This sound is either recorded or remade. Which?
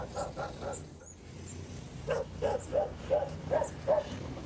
recorded